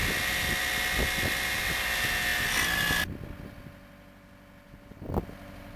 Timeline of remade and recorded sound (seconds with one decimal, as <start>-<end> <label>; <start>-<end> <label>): 0.0-5.8 recorded

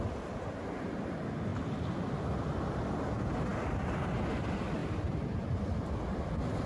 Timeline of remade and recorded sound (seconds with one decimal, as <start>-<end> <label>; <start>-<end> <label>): 0.0-6.7 recorded